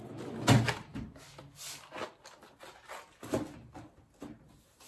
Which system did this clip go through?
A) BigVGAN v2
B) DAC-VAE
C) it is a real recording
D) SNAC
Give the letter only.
C